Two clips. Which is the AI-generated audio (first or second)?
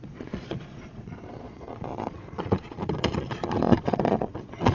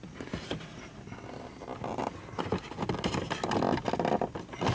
first